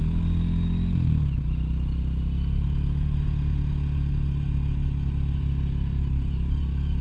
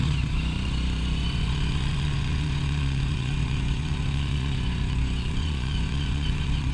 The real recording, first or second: first